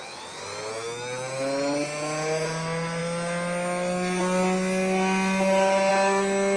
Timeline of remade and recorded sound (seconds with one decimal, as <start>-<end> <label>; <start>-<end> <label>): 0.0-6.6 recorded